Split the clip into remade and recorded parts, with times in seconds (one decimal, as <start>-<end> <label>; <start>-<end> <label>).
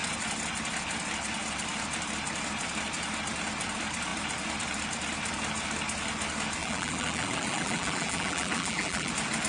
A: 0.0-6.6 recorded; 6.6-9.1 remade; 9.1-9.5 recorded